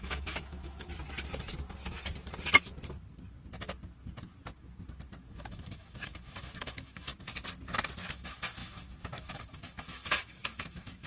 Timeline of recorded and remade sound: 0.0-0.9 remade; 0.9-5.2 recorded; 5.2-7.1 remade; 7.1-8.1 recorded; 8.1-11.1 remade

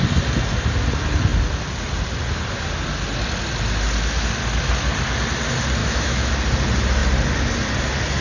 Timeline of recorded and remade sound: 0.0-5.8 recorded; 5.8-6.3 remade; 6.3-8.2 recorded

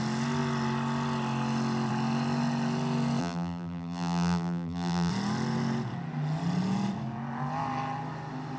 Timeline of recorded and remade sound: 0.0-3.2 recorded; 3.2-5.1 remade; 5.1-8.6 recorded

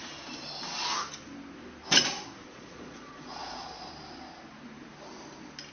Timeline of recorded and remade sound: 0.0-2.5 recorded; 2.5-3.9 remade; 3.9-5.7 recorded

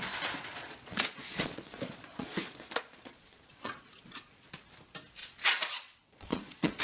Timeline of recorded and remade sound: 0.0-0.5 recorded; 0.5-4.6 remade; 4.6-5.2 recorded; 5.2-6.8 remade

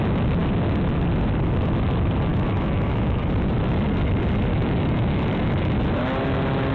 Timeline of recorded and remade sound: 0.0-2.3 recorded; 2.3-3.2 remade; 3.2-4.5 recorded; 4.5-5.7 remade; 5.7-6.7 recorded

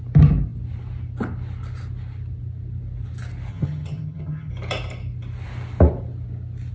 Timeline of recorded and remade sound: 0.0-3.5 recorded; 3.5-4.5 remade; 4.5-6.7 recorded

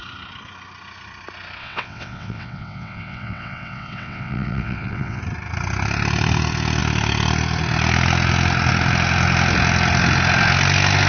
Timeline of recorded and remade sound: 0.0-1.6 recorded; 1.6-5.2 remade; 5.2-11.1 recorded